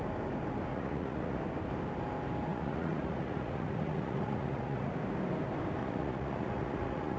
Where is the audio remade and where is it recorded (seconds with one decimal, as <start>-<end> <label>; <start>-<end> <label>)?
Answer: 0.0-0.7 recorded; 0.7-1.4 remade; 1.4-2.5 recorded; 2.5-4.9 remade; 4.9-5.8 recorded; 5.8-7.2 remade